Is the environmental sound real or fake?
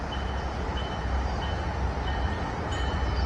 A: real